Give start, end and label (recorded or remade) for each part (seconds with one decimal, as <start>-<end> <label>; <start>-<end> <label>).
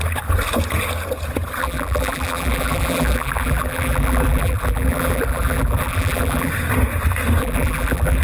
0.0-1.6 recorded; 1.6-6.5 remade; 6.5-7.4 recorded; 7.4-8.2 remade